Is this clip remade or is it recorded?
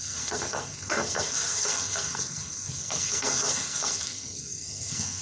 remade